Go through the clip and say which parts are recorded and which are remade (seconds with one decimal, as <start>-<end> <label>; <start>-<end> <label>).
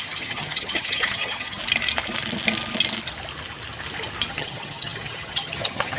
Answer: 0.0-1.6 remade; 1.6-4.3 recorded; 4.3-6.0 remade